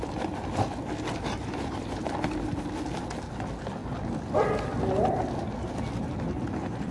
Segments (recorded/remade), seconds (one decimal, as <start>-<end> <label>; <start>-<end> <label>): 0.0-6.9 recorded